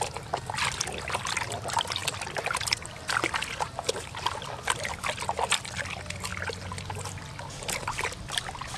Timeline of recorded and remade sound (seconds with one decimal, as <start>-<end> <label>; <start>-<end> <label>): 0.0-2.0 recorded; 2.0-4.9 remade; 4.9-8.8 recorded

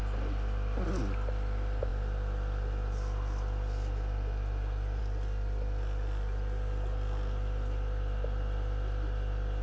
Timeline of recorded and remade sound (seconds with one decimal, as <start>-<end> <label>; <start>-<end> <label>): 0.0-9.6 recorded